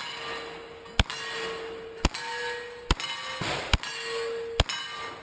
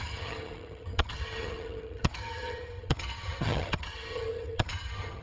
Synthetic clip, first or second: second